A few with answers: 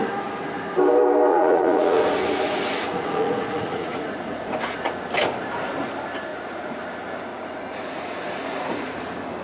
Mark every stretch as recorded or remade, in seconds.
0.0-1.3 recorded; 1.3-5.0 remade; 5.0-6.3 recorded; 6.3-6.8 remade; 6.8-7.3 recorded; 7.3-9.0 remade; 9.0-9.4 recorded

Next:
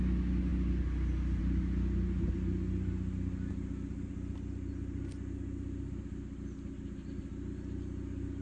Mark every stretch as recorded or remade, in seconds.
0.0-8.4 recorded

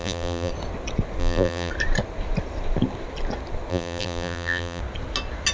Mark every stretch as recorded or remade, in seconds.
0.0-0.5 remade; 0.5-1.2 recorded; 1.2-1.7 remade; 1.7-3.7 recorded; 3.7-4.8 remade; 4.8-5.5 recorded

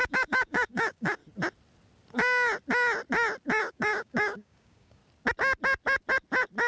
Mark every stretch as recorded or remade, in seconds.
0.0-1.2 remade; 1.2-3.6 recorded; 3.6-5.0 remade; 5.0-6.7 recorded

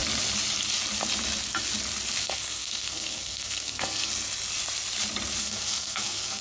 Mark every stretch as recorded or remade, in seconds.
0.0-2.2 recorded; 2.2-4.1 remade; 4.1-5.4 recorded; 5.4-6.4 remade